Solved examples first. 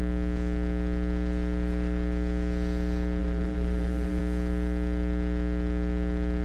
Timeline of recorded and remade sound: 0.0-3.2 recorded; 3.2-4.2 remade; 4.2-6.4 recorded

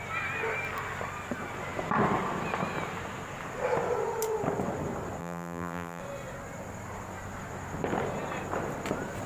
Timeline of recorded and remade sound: 0.0-5.2 recorded; 5.2-6.0 remade; 6.0-9.3 recorded